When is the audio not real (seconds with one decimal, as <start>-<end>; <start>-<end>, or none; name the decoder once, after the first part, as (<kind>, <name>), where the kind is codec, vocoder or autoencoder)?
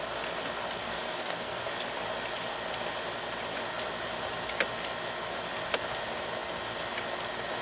0.8-1.7 (codec, SNAC)